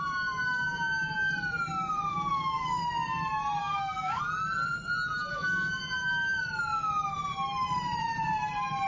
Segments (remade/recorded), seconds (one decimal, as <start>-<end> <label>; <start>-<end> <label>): 0.0-2.1 recorded; 2.1-2.8 remade; 2.8-3.6 recorded; 3.6-4.2 remade; 4.2-5.3 recorded; 5.3-5.8 remade; 5.8-8.9 recorded